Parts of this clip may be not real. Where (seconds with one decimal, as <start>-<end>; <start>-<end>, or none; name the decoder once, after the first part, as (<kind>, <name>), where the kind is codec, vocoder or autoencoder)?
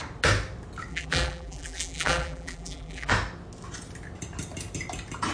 0.9-3.1 (vocoder, BigVGAN v2)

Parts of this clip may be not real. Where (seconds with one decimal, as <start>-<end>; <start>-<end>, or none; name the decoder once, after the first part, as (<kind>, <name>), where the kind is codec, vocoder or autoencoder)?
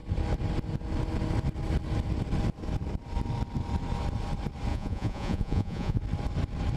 4.7-6.0 (vocoder, Vocos)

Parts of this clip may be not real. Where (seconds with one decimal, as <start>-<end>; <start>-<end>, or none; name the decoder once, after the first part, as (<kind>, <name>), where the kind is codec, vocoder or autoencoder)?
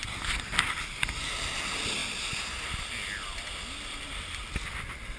none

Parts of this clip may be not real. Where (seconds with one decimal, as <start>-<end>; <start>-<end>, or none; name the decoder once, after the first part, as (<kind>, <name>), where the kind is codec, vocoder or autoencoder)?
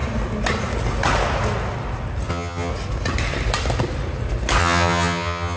2.3-2.7 (vocoder, HiFi-GAN); 4.6-5.6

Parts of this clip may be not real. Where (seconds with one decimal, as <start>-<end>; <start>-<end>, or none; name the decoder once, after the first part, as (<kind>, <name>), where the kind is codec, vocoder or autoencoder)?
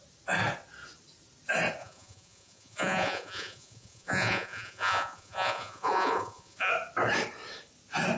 1.8-6.7 (vocoder, Vocos)